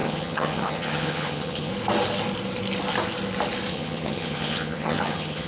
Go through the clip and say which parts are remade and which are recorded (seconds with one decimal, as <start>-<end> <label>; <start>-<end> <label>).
0.0-1.7 remade; 1.7-3.7 recorded; 3.7-5.5 remade